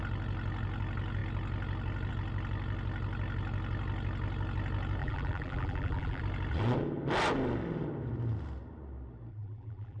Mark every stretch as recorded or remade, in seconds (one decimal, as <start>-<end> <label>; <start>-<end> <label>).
0.0-5.0 recorded; 5.0-6.2 remade; 6.2-9.3 recorded; 9.3-10.0 remade